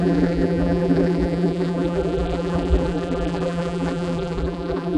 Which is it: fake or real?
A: fake